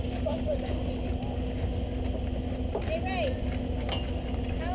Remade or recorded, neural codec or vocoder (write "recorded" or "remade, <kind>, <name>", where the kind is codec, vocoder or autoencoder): recorded